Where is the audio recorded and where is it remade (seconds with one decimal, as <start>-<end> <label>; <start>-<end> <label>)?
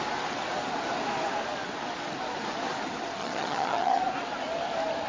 0.0-3.2 recorded; 3.2-4.0 remade; 4.0-5.1 recorded